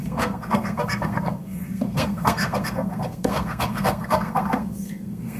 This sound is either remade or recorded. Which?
remade